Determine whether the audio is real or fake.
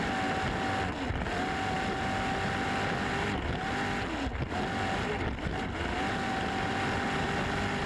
real